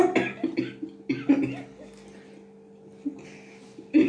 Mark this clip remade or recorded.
recorded